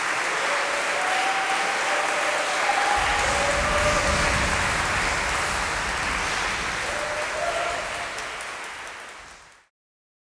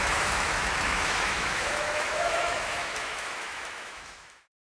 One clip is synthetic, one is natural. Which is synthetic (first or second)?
second